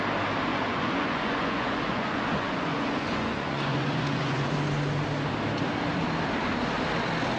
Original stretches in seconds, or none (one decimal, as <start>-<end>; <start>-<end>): 0.0-0.5; 4.5-7.4